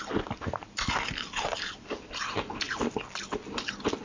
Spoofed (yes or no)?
no